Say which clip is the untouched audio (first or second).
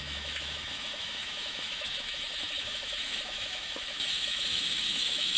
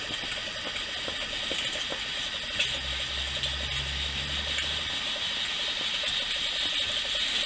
second